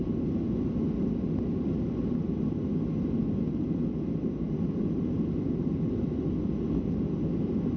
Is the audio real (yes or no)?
yes